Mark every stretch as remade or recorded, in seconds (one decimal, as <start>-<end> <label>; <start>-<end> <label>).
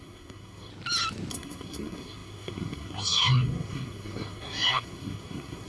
0.0-0.7 remade; 0.7-1.3 recorded; 1.3-5.7 remade